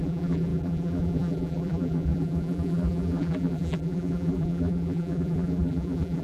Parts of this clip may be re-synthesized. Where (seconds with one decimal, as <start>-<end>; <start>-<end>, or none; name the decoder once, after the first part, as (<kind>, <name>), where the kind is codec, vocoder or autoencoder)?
0.0-6.2 (vocoder, BigVGAN v2)